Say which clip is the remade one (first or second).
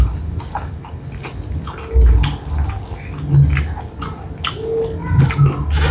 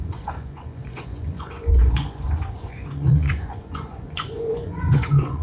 second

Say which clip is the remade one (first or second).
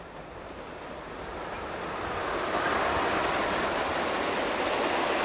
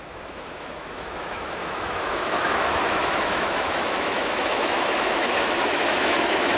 second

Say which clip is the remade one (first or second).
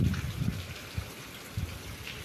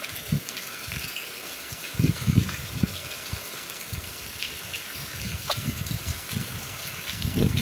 second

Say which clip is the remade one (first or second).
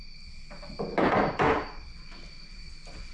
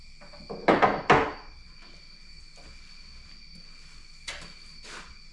first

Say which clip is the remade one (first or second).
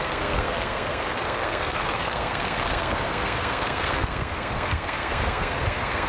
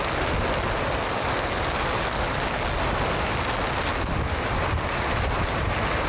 first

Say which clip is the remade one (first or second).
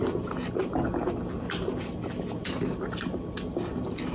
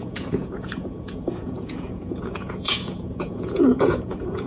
second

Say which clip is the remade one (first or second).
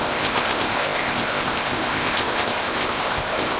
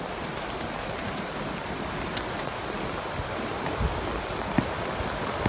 first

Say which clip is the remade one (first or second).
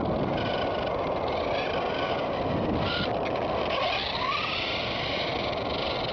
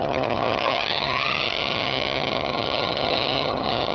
second